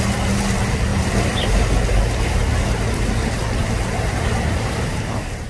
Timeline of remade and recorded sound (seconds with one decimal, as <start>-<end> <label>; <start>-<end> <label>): 0.0-0.9 recorded; 0.9-2.0 remade; 2.0-3.6 recorded; 3.6-5.5 remade